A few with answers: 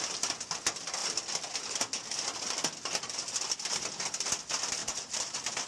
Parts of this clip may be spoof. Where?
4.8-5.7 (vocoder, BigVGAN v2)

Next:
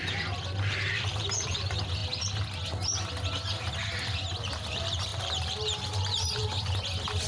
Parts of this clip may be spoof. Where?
0.0-2.0 (vocoder, BigVGAN v2); 4.4-6.4